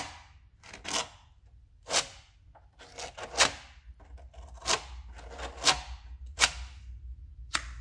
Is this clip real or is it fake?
real